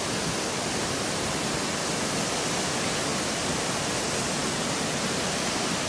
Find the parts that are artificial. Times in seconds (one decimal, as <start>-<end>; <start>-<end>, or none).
none